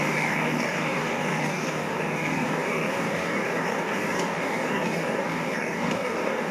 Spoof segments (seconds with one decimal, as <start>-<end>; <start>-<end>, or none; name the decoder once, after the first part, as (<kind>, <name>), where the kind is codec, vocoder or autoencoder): 0.0-6.5 (codec, DAC)